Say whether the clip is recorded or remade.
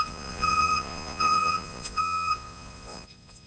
remade